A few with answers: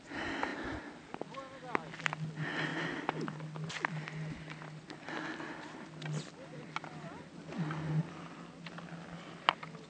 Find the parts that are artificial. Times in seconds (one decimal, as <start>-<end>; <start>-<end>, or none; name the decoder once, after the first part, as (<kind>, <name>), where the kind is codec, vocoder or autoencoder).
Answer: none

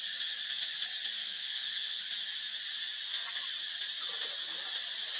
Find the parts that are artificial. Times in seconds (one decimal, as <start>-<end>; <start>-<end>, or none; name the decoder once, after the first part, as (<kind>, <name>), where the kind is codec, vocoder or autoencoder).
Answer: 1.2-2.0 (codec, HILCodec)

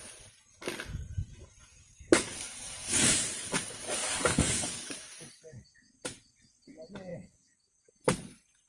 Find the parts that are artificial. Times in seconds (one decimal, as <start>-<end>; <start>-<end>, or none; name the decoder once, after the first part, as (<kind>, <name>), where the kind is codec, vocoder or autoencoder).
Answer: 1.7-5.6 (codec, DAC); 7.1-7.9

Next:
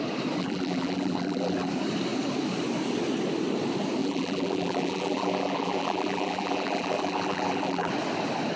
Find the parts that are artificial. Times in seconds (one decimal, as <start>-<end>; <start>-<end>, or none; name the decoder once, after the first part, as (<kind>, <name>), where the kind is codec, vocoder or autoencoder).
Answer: 0.4-1.7 (vocoder, BigVGAN v2); 4.0-7.9

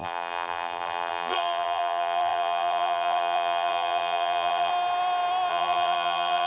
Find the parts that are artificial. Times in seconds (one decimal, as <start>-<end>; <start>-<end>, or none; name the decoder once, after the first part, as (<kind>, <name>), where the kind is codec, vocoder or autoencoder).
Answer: 0.0-4.7 (vocoder, BigVGAN v2); 5.5-6.5

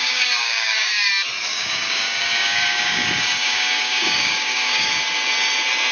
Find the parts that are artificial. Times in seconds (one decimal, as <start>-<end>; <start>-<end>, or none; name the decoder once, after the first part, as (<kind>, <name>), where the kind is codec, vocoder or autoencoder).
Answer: 0.0-1.1 (codec, DAC); 1.5-4.9